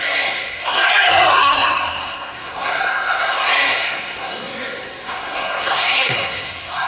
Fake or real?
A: fake